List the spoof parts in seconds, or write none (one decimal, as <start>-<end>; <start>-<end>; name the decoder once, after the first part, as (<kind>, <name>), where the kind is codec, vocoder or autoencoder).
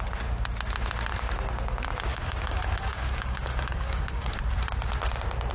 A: 2.1-4.4 (codec, DAC)